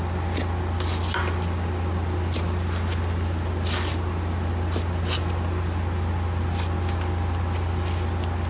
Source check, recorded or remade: recorded